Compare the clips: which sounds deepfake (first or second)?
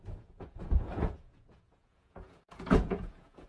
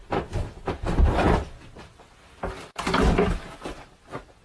first